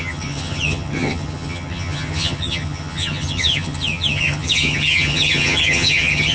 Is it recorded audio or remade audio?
remade